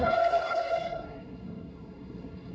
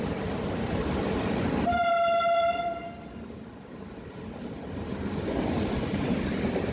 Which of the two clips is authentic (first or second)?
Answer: second